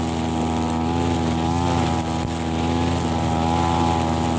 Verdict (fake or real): real